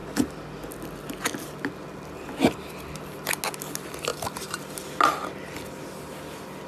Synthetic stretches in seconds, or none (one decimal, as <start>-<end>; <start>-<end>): none